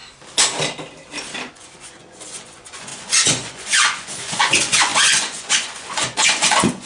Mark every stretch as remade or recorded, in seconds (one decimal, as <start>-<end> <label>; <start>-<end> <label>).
0.0-1.5 recorded; 1.5-6.9 remade